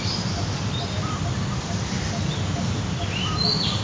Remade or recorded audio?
recorded